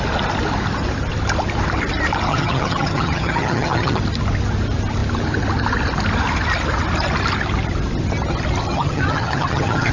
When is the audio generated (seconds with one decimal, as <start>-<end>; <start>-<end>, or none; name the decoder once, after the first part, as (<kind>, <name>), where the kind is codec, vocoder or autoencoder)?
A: 2.3-4.0 (vocoder, HiFi-GAN); 8.7-9.9